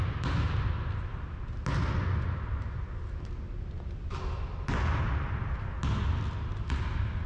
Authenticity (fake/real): real